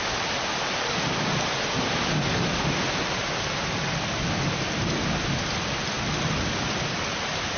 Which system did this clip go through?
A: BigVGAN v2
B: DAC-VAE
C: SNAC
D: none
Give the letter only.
D